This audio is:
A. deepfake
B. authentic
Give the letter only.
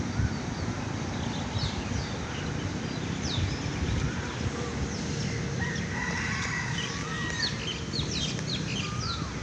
B